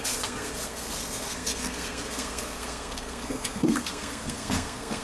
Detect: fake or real fake